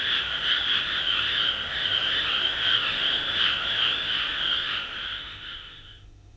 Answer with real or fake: fake